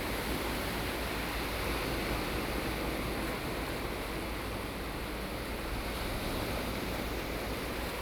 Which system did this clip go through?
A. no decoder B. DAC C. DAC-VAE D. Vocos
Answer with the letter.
A